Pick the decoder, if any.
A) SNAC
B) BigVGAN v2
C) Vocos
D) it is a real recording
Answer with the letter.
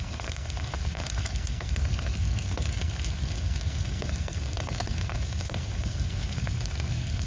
A